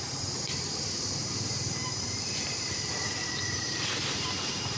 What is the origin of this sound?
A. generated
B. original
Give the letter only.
A